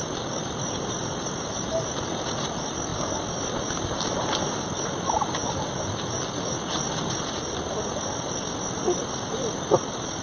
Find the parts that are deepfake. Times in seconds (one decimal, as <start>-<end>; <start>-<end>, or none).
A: none